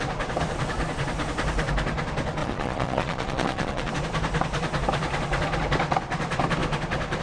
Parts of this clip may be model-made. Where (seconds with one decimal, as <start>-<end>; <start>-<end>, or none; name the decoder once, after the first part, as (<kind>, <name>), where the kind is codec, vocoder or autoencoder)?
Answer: 2.4-3.9 (vocoder, Vocos)